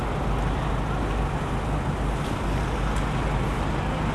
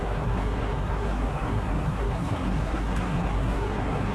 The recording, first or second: first